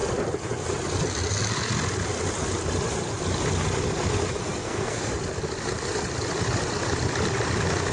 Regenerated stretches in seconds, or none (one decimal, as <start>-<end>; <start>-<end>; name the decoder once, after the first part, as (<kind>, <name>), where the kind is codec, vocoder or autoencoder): 4.6-5.1 (codec, SNAC)